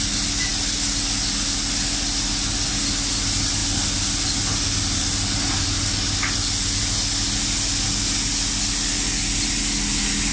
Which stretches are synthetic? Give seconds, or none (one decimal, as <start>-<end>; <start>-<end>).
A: none